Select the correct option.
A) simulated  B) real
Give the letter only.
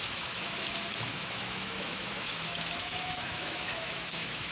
A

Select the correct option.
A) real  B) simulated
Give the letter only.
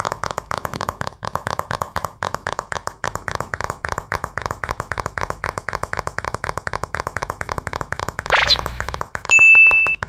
B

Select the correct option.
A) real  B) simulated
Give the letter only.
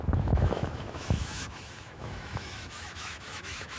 B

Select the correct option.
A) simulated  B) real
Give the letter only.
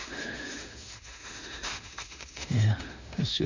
A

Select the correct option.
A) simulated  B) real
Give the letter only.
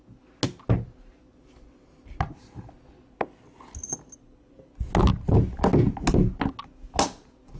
B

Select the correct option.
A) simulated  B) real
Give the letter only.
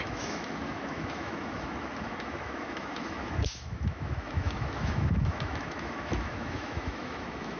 A